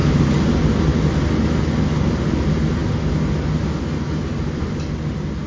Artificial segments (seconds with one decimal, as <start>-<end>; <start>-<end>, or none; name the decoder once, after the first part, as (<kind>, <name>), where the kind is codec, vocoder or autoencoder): none